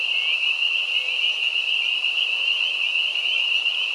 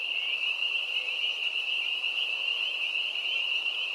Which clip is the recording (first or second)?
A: first